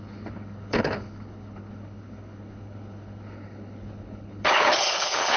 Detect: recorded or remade remade